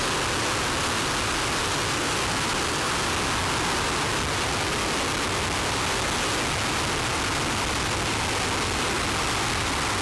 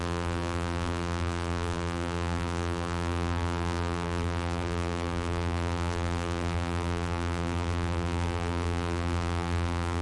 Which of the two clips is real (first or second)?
first